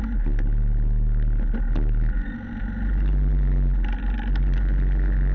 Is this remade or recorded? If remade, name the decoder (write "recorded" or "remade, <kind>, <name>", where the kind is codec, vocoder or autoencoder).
recorded